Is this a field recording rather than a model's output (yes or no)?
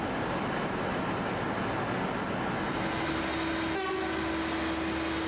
yes